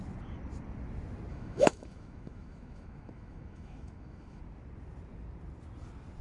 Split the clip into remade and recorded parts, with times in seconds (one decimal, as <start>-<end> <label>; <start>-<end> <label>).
0.0-1.3 recorded; 1.3-4.4 remade; 4.4-6.2 recorded